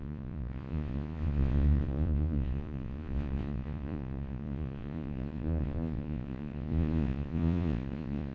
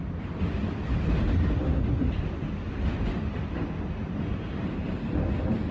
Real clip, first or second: second